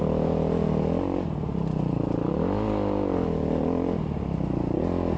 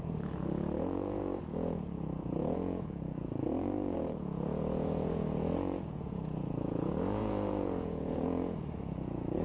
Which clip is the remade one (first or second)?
second